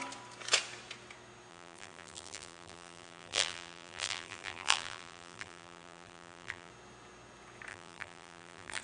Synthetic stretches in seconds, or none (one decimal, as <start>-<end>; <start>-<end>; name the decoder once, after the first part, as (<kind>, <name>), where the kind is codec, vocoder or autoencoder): 1.5-6.7 (vocoder, BigVGAN v2); 7.7-8.8